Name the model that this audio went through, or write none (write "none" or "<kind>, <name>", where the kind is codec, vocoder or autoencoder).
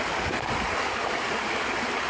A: none